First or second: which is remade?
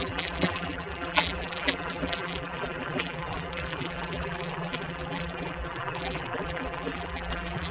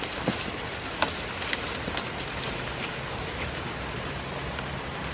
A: first